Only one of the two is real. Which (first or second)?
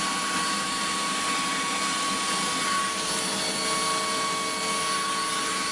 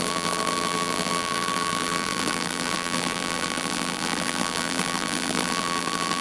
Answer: first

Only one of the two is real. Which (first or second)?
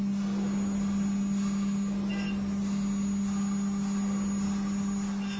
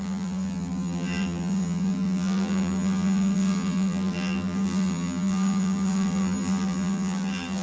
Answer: first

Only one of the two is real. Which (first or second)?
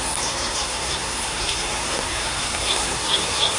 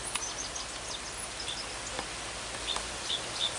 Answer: second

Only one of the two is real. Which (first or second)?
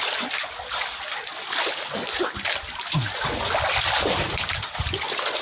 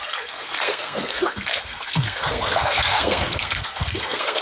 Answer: first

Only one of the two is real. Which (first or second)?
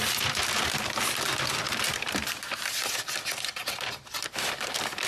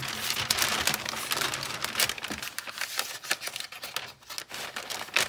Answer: second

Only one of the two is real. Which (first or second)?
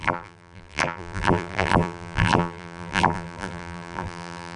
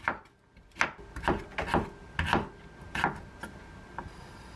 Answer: second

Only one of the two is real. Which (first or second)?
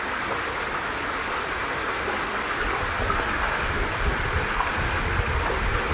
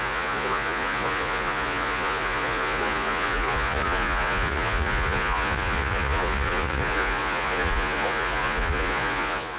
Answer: first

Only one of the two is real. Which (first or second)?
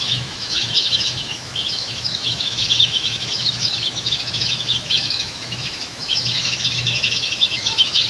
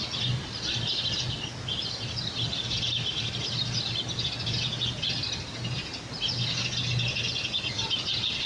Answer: second